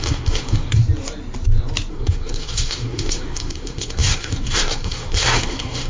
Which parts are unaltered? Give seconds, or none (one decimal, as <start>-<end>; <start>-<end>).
0.8-1.9